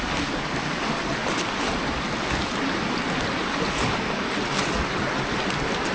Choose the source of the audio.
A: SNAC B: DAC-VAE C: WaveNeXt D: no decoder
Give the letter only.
D